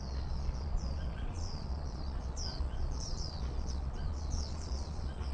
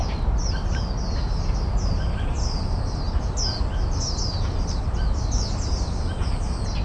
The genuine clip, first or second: second